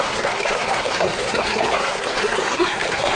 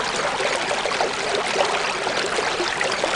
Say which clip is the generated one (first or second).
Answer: first